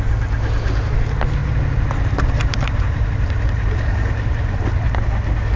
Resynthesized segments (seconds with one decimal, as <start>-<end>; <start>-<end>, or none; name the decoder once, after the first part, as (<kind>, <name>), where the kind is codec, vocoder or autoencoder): 1.4-4.8 (vocoder, BigVGAN v2)